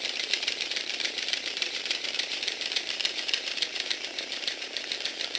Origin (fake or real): fake